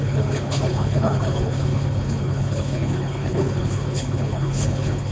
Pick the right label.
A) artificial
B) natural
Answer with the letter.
A